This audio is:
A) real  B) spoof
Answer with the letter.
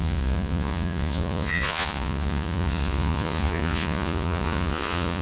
B